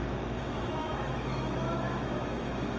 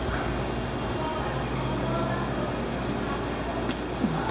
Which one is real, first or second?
second